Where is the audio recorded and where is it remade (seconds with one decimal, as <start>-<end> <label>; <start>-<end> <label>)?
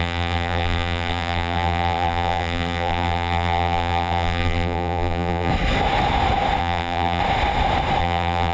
0.0-5.5 remade; 5.5-6.6 recorded; 6.6-7.2 remade; 7.2-8.0 recorded; 8.0-8.5 remade